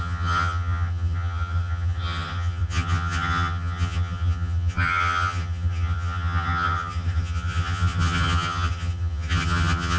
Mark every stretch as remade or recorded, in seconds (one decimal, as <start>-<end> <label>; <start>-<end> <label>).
0.0-10.0 remade